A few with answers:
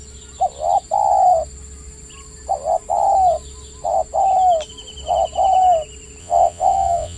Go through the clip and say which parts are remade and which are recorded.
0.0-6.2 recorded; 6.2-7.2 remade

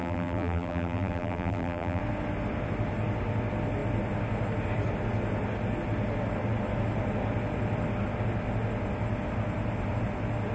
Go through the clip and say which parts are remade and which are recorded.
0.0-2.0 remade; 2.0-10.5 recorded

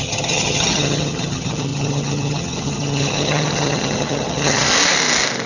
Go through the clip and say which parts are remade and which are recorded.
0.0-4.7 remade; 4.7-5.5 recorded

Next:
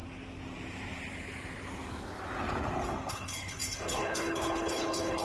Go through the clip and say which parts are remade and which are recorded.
0.0-3.1 recorded; 3.1-5.2 remade

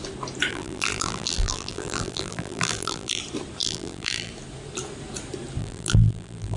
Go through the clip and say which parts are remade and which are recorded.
0.0-0.5 recorded; 0.5-3.2 remade; 3.2-3.6 recorded; 3.6-4.3 remade; 4.3-5.6 recorded; 5.6-6.6 remade

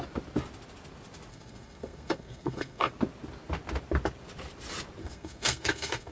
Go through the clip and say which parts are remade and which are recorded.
0.0-1.3 recorded; 1.3-2.9 remade; 2.9-5.0 recorded; 5.0-6.1 remade